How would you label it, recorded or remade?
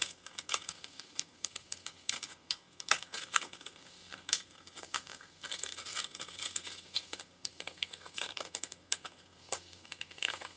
remade